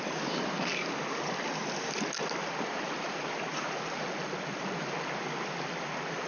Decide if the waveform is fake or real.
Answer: real